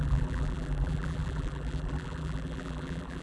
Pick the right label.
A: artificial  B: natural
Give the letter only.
A